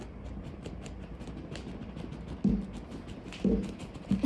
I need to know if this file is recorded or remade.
recorded